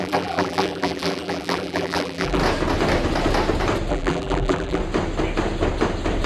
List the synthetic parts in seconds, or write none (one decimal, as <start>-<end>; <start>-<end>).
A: 0.0-2.4; 3.9-4.8